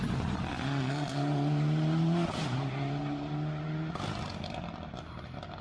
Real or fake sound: real